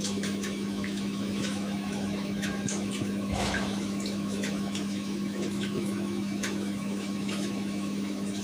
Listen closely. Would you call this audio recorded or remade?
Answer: remade